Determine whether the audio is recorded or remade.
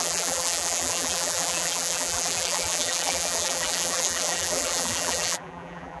remade